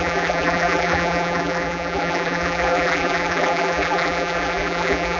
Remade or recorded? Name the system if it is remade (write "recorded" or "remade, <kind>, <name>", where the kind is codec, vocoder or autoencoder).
remade, vocoder, BigVGAN v2